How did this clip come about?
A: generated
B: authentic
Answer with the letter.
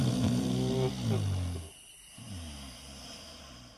B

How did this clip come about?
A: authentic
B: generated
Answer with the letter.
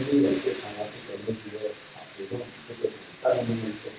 A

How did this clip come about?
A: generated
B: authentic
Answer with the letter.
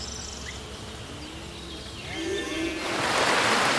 B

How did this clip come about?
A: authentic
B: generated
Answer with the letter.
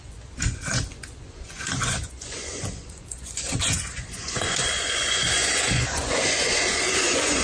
B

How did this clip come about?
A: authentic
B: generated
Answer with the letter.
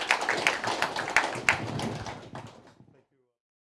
A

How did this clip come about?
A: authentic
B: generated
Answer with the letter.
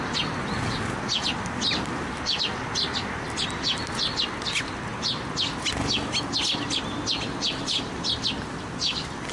A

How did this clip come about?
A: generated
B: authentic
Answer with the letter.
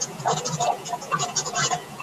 A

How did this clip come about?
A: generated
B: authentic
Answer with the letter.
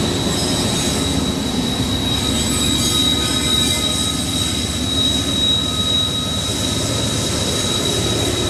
B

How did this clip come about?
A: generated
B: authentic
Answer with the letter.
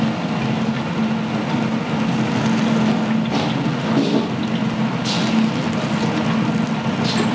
B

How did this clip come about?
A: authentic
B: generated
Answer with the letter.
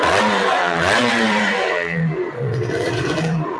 B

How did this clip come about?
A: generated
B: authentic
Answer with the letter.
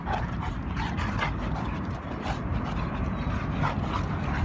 B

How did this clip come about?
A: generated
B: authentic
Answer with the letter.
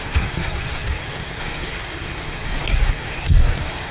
A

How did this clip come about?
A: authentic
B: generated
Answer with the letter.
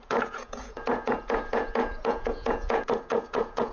B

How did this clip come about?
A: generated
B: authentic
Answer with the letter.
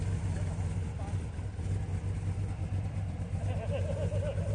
B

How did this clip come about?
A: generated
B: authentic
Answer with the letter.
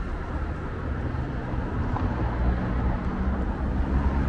B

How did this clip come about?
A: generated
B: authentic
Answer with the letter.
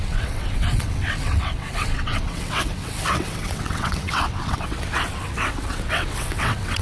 A